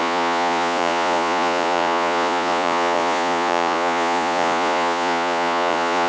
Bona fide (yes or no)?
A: no